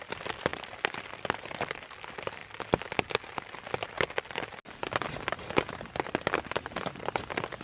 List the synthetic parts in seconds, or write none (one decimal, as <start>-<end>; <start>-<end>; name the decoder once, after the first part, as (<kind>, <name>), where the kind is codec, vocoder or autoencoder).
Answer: none

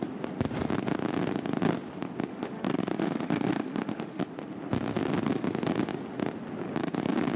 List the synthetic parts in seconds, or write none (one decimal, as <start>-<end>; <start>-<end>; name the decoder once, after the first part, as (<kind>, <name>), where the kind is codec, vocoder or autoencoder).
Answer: 2.3-4.2 (autoencoder, DAC-VAE)

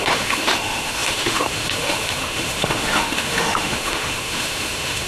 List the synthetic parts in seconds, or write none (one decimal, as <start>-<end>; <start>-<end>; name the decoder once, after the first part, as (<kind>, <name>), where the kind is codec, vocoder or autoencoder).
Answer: 0.0-5.1 (autoencoder, DAC-VAE)

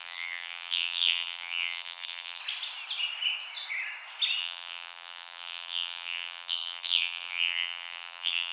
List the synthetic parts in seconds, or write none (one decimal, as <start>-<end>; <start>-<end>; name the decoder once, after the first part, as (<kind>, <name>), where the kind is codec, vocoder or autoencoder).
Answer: 0.0-2.4 (vocoder, BigVGAN v2); 4.4-8.5

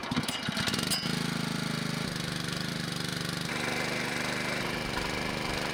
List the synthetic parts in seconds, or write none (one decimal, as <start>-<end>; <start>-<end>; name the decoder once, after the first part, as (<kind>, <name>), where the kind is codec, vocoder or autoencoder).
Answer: 2.7-5.7 (vocoder, BigVGAN v2)

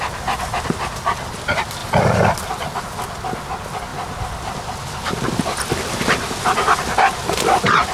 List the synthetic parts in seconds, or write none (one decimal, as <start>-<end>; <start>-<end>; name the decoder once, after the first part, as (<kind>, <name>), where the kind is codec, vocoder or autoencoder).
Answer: 1.8-2.8 (vocoder, BigVGAN v2)